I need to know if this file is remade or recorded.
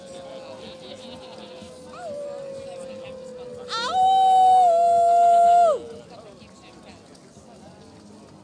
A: recorded